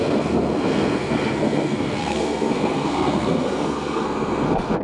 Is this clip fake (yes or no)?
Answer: yes